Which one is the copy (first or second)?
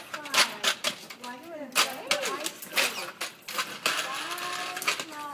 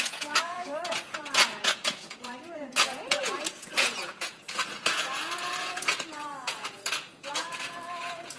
second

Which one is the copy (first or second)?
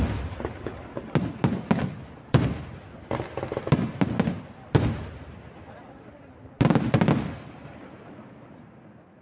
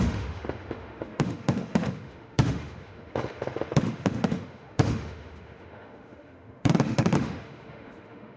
second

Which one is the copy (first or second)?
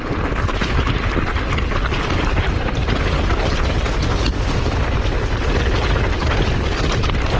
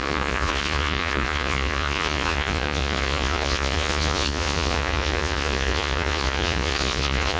second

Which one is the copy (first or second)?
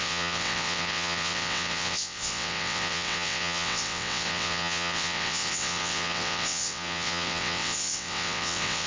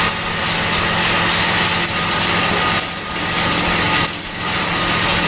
first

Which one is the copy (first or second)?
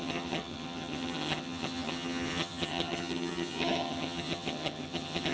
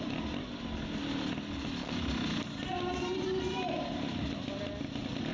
first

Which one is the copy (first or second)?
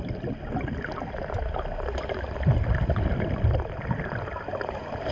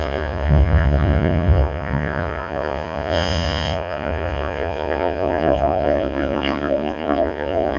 second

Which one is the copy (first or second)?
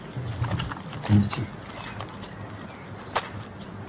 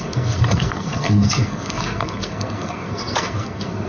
second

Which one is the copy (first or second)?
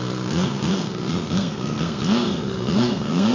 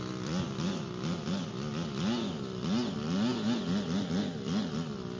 first